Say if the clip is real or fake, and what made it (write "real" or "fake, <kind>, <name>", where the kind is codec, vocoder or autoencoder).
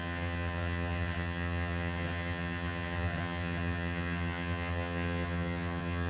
fake, vocoder, HiFi-GAN